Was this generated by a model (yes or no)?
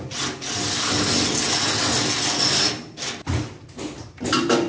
no